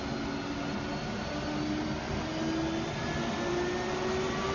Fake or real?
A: real